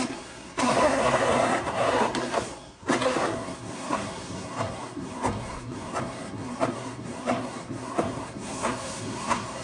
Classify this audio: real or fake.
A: fake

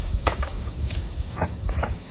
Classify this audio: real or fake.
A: fake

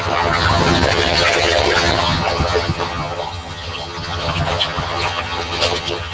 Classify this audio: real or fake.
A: fake